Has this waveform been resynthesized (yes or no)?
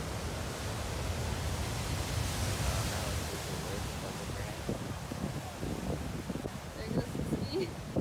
no